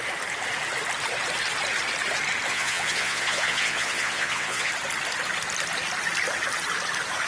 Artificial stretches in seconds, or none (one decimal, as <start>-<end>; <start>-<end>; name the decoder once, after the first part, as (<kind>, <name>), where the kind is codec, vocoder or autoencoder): 2.5-4.7 (vocoder, Vocos)